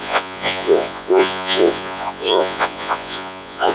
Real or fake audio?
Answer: fake